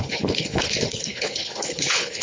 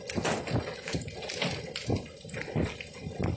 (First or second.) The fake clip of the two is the first